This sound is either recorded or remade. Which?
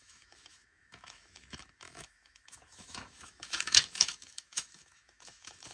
remade